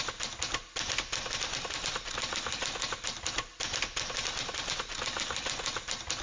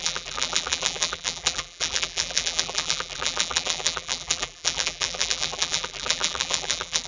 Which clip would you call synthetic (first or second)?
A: second